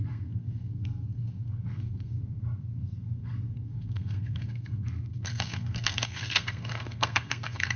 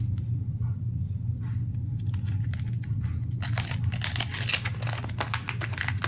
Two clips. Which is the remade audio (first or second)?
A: first